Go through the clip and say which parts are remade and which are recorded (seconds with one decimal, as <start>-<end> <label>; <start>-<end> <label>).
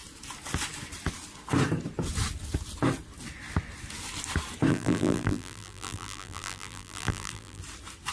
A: 0.0-4.7 recorded; 4.7-7.6 remade; 7.6-8.1 recorded